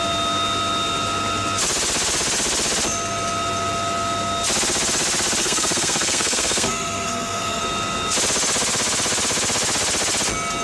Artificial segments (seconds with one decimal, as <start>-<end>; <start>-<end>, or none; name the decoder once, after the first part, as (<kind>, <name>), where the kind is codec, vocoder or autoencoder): 5.4-7.6 (codec, SNAC)